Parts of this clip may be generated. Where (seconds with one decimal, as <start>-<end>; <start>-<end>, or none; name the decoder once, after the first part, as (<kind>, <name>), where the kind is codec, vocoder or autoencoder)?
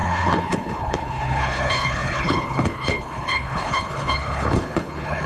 0.0-5.3 (codec, HILCodec)